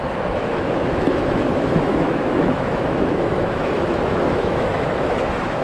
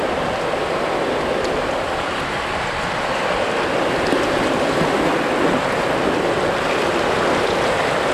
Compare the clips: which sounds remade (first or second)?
first